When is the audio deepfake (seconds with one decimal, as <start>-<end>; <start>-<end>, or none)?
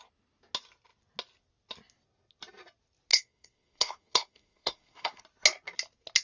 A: 3.1-5.2